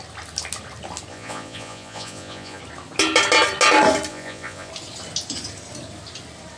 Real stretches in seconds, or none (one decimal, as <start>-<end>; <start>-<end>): 0.0-1.1; 2.6-4.1; 4.7-6.6